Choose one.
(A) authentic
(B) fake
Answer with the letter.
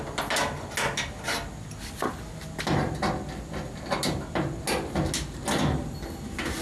A